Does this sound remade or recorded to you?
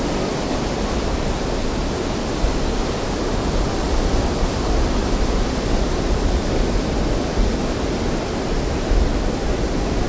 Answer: recorded